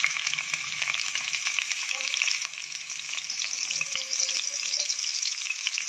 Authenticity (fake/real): fake